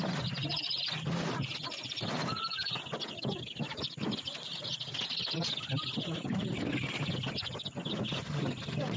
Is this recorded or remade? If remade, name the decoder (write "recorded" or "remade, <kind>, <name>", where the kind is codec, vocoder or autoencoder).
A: recorded